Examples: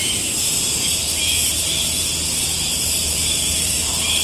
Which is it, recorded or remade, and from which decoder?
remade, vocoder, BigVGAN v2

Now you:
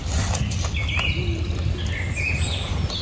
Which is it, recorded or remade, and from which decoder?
recorded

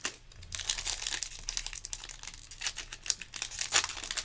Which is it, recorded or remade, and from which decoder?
recorded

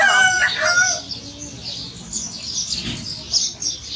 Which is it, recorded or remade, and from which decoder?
recorded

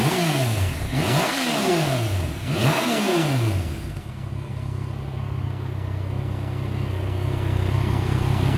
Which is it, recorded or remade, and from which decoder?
remade, codec, SNAC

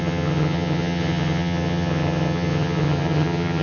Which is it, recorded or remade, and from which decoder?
remade, vocoder, HiFi-GAN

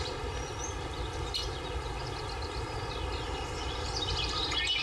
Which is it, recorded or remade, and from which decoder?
recorded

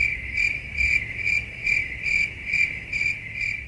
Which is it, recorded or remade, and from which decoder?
recorded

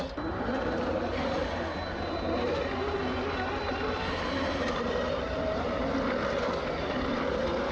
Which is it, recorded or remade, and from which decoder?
recorded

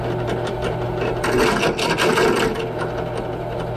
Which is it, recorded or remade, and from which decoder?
recorded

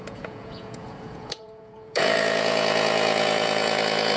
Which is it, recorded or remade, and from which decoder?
remade, vocoder, Vocos